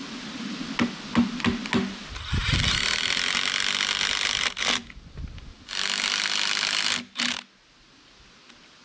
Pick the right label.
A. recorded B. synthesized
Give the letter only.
A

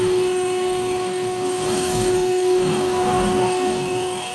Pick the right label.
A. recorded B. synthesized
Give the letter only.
B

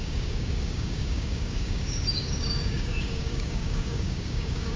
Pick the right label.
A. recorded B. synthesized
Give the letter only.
B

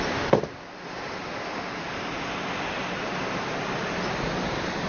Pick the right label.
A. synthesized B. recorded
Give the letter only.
B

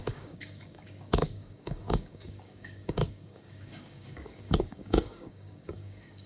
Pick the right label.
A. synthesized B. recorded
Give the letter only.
A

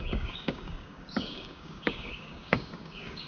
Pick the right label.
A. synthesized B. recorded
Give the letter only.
A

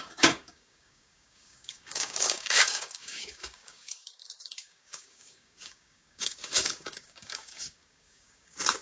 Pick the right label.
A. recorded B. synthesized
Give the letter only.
B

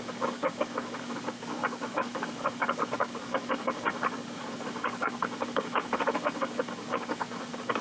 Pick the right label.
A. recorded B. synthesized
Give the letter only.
B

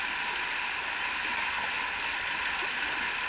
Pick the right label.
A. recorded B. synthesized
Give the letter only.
A